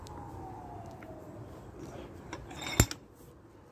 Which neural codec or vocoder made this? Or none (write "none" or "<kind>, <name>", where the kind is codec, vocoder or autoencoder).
none